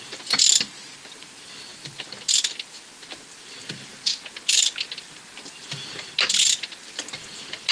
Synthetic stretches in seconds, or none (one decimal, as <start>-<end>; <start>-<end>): none